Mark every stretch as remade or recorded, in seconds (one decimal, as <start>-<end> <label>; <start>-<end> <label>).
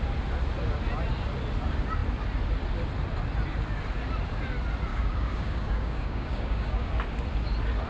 0.0-4.9 recorded; 4.9-6.9 remade; 6.9-7.9 recorded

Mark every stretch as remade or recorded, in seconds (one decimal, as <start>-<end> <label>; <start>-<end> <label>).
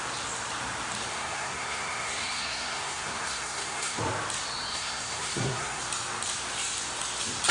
0.0-1.1 recorded; 1.1-4.0 remade; 4.0-4.7 recorded; 4.7-5.8 remade; 5.8-7.5 recorded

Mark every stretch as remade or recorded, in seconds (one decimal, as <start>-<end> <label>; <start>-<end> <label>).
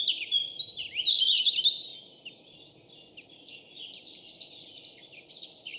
0.0-5.8 recorded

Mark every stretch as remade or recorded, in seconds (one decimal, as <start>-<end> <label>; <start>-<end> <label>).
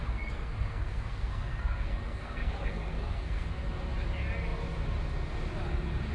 0.0-3.5 remade; 3.5-6.1 recorded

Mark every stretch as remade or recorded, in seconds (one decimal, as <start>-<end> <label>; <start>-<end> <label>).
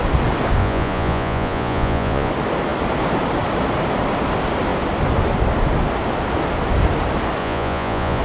0.0-0.6 recorded; 0.6-2.3 remade; 2.3-7.4 recorded; 7.4-8.2 remade